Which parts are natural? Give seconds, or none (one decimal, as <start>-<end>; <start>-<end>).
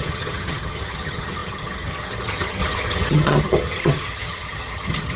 none